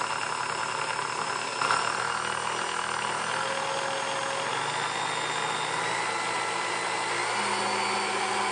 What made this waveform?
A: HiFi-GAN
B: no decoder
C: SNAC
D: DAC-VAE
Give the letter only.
B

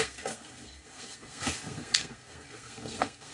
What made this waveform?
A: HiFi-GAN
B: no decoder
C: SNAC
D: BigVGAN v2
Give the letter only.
C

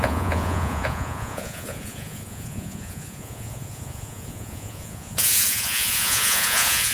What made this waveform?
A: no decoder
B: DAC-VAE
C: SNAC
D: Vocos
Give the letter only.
D